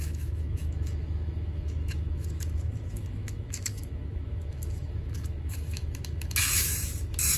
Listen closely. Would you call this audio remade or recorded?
remade